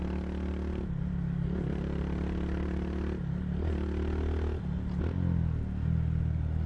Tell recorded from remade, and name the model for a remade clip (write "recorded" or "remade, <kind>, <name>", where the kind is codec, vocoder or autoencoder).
recorded